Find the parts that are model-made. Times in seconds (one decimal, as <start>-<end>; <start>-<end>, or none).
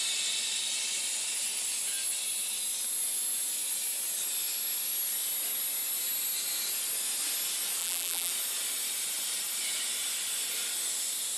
7.8-8.3